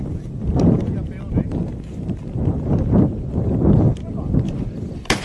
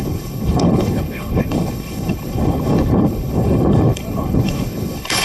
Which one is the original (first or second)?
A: first